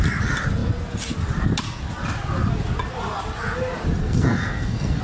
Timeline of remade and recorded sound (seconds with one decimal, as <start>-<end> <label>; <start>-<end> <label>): 0.0-4.0 recorded; 4.0-5.0 remade